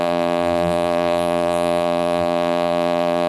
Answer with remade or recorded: remade